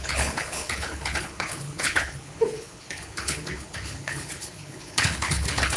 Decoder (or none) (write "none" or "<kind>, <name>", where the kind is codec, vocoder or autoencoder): codec, HILCodec